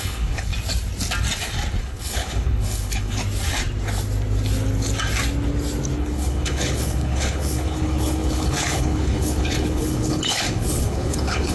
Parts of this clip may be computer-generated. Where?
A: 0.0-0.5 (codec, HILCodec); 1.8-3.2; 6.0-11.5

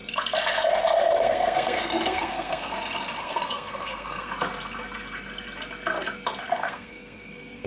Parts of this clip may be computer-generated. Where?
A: 1.0-2.7 (codec, SNAC); 3.2-4.3; 6.5-7.7

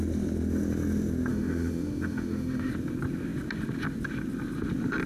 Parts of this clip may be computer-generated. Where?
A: 1.3-2.7 (autoencoder, DAC-VAE)